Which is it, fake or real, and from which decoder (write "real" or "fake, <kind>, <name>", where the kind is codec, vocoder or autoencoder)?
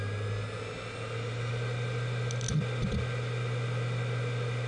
real